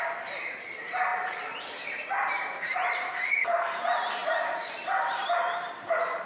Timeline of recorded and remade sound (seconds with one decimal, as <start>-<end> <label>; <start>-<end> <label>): 0.0-6.3 remade